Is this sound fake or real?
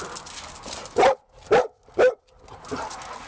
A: real